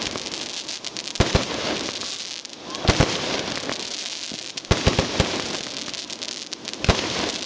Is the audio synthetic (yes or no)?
no